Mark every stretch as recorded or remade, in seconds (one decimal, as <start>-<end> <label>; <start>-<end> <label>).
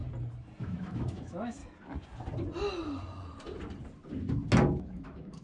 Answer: 0.0-0.6 recorded; 0.6-1.6 remade; 1.6-4.8 recorded; 4.8-5.4 remade